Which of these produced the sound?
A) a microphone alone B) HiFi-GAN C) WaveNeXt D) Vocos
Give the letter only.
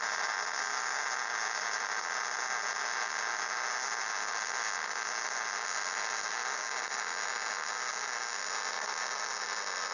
A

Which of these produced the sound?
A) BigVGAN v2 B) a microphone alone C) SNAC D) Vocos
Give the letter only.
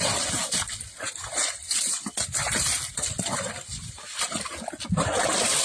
B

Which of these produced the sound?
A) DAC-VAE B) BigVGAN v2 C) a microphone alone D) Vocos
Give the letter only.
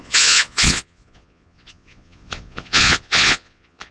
D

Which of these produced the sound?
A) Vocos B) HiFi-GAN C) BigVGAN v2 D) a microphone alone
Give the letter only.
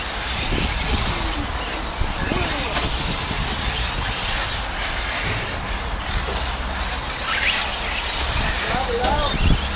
D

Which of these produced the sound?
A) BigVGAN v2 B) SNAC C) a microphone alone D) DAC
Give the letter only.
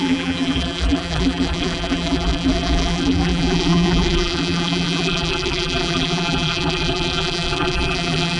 A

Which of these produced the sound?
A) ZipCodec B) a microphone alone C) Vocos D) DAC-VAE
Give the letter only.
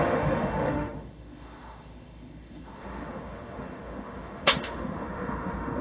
D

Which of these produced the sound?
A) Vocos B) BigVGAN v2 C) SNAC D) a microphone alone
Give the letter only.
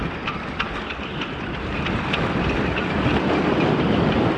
B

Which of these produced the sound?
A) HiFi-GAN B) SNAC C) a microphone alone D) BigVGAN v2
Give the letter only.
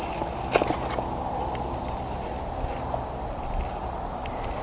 C